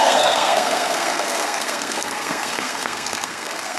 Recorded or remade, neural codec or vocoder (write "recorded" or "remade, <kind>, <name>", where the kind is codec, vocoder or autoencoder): remade, codec, SNAC